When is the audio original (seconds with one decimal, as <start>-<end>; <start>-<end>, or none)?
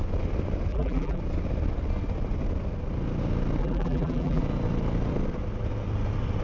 0.0-0.7; 1.2-3.6; 4.4-6.4